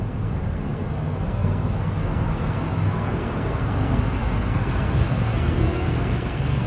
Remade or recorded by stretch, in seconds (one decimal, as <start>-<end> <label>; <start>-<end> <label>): 0.0-6.7 remade